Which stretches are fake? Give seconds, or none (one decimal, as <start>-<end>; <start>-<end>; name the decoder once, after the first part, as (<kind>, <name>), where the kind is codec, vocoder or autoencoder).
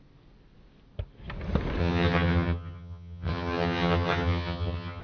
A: 1.8-5.0 (vocoder, HiFi-GAN)